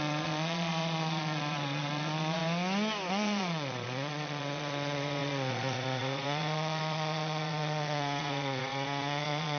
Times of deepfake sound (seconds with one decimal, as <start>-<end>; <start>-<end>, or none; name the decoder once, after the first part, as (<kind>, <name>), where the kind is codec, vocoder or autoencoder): 0.0-2.4 (vocoder, Vocos); 3.1-9.6